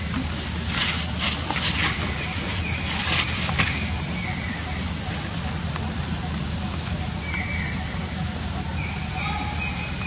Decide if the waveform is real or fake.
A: real